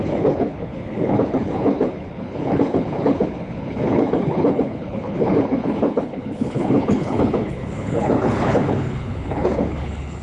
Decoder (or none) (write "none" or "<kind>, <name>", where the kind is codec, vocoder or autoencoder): codec, HILCodec